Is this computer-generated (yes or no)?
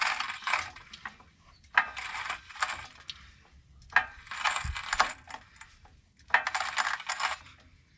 no